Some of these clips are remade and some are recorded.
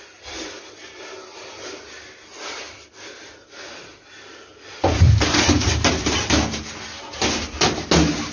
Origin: recorded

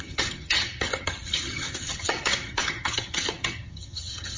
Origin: remade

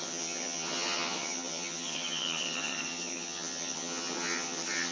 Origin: remade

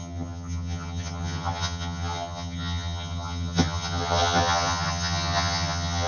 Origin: remade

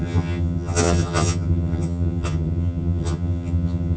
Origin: remade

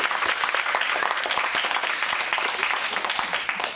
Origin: recorded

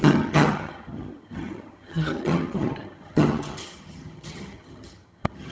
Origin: remade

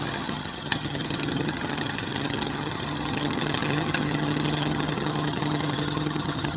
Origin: remade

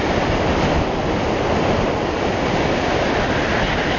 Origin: recorded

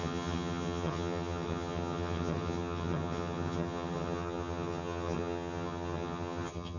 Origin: remade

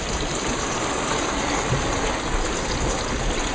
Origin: recorded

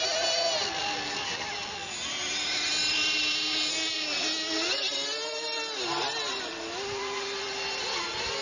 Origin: recorded